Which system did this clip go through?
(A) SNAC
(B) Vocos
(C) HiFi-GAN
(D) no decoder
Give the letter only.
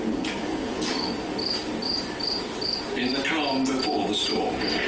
D